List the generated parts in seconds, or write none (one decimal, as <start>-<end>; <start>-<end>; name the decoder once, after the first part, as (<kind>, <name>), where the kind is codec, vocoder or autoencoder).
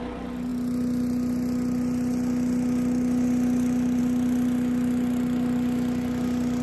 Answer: none